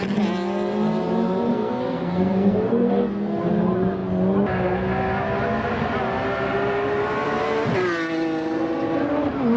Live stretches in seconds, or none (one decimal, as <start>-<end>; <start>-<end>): 0.0-1.5; 3.5-9.6